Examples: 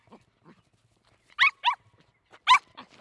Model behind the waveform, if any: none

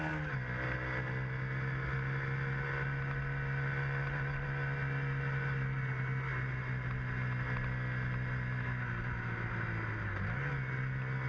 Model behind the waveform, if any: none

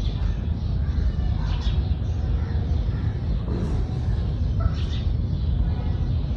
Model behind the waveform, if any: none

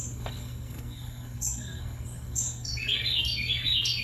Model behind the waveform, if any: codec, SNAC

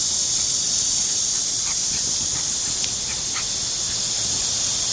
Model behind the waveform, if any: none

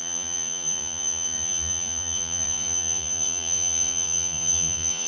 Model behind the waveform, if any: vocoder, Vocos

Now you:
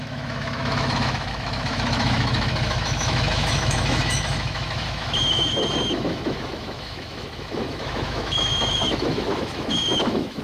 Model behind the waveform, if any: autoencoder, DAC-VAE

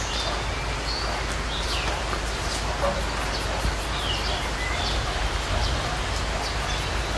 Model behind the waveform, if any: none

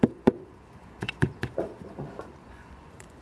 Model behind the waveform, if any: vocoder, Vocos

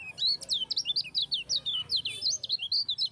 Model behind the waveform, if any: none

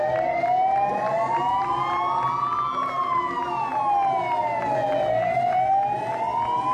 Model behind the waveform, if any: none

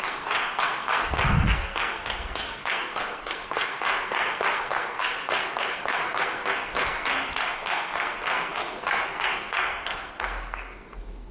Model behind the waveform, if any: codec, SNAC